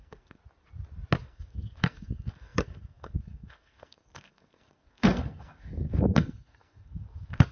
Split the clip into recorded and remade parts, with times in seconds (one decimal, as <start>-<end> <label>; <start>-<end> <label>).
0.0-0.4 remade; 0.4-1.2 recorded; 1.2-7.5 remade